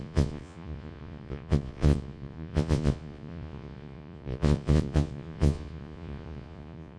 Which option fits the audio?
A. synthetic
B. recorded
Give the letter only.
A